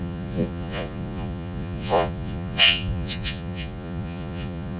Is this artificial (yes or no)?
yes